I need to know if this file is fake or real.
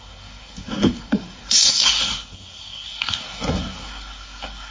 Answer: fake